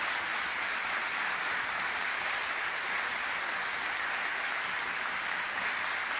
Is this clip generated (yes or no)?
no